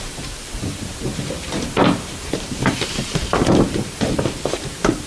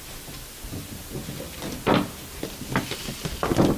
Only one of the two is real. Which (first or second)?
second